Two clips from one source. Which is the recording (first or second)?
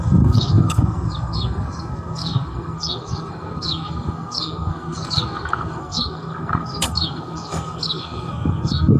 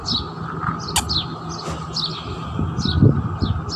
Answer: second